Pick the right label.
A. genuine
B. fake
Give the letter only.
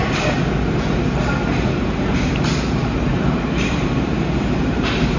B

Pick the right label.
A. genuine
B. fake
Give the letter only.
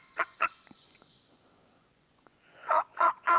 B